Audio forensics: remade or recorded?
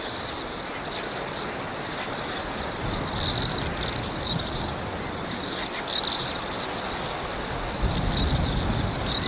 recorded